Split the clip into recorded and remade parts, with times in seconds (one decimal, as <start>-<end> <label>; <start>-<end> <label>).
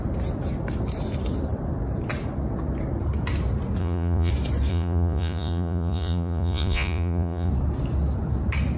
0.0-3.8 recorded; 3.8-4.3 remade; 4.3-4.7 recorded; 4.7-7.5 remade; 7.5-8.8 recorded